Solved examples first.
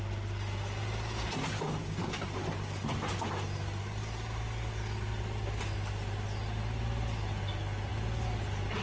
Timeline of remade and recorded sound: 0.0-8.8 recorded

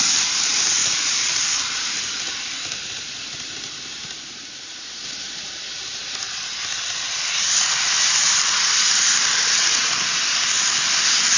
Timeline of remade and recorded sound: 0.0-0.8 recorded; 0.8-3.1 remade; 3.1-11.4 recorded

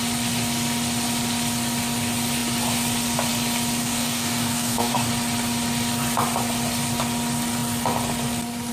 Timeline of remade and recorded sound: 0.0-3.8 recorded; 3.8-5.1 remade; 5.1-8.7 recorded

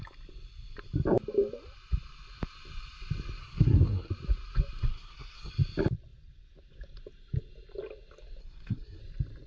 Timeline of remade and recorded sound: 0.0-3.4 recorded; 3.4-4.1 remade; 4.1-4.9 recorded; 4.9-5.5 remade; 5.5-8.4 recorded; 8.4-9.0 remade; 9.0-9.5 recorded

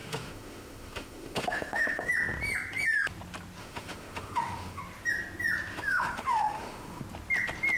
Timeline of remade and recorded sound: 0.0-2.1 remade; 2.1-3.6 recorded; 3.6-4.8 remade; 4.8-5.7 recorded; 5.7-7.0 remade; 7.0-7.8 recorded

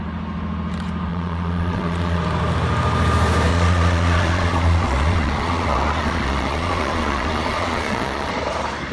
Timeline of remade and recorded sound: 0.0-1.1 recorded; 1.1-2.2 remade; 2.2-3.5 recorded; 3.5-8.3 remade; 8.3-8.9 recorded